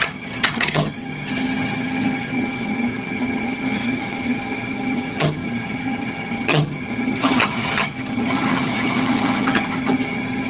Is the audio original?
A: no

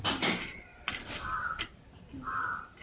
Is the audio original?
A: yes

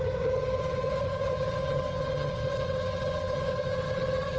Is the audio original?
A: no